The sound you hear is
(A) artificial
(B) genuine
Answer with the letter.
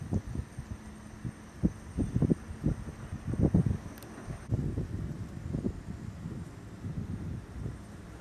B